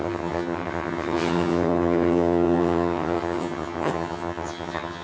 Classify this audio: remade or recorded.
remade